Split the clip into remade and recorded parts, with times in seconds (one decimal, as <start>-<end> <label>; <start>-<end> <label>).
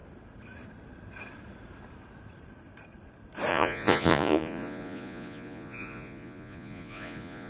0.0-3.5 recorded; 3.5-7.5 remade